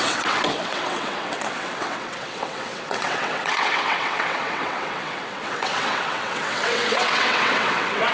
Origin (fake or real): fake